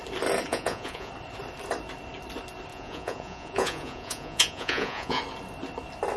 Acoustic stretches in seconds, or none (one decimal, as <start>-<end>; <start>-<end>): 0.0-0.5; 1.1-2.7; 5.2-6.2